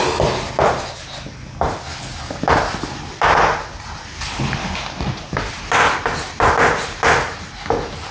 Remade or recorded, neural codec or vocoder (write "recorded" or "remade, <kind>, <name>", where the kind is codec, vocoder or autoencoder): recorded